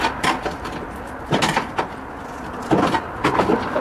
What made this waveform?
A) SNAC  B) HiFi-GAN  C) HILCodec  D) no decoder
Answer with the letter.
D